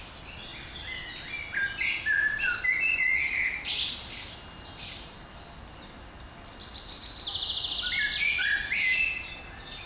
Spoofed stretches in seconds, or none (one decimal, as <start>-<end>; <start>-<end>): none